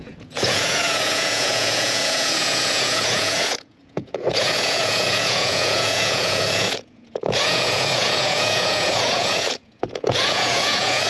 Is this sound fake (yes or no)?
yes